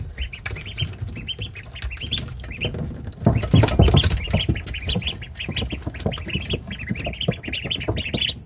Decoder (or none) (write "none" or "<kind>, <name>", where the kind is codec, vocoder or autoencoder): none